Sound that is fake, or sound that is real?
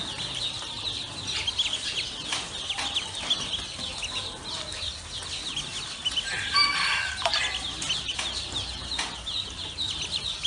real